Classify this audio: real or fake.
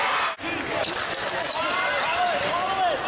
real